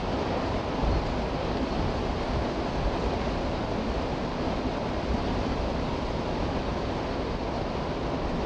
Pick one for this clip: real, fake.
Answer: real